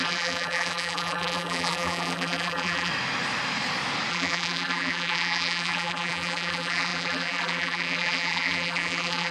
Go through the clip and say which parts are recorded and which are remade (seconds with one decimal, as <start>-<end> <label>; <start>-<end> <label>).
0.0-2.9 remade; 2.9-4.1 recorded; 4.1-9.3 remade